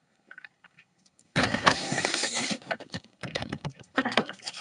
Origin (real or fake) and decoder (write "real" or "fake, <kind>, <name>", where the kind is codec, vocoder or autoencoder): fake, codec, SNAC